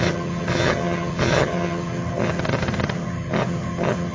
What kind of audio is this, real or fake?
fake